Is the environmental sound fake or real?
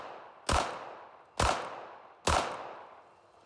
real